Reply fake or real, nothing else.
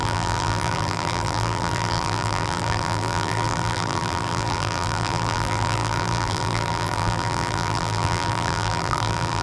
fake